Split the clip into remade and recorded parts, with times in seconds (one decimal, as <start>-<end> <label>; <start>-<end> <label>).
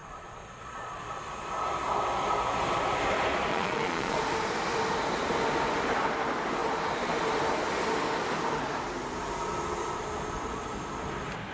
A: 0.0-1.0 remade; 1.0-3.5 recorded; 3.5-4.2 remade; 4.2-11.5 recorded